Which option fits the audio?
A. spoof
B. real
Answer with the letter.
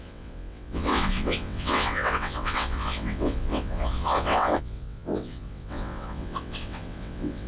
A